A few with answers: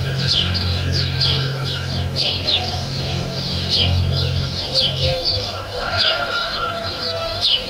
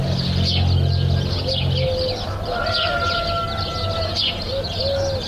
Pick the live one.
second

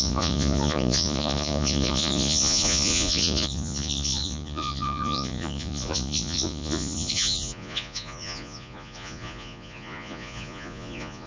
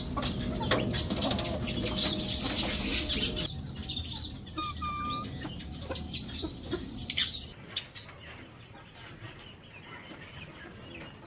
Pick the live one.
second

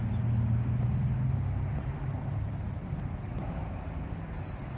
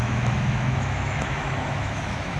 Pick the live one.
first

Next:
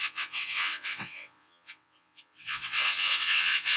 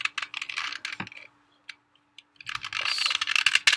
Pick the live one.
second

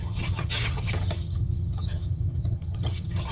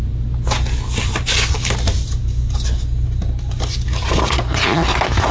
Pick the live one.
second